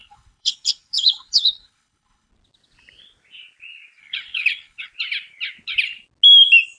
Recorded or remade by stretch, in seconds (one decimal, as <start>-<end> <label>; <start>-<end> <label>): 0.0-2.3 remade; 2.3-4.0 recorded; 4.0-4.9 remade; 4.9-6.8 recorded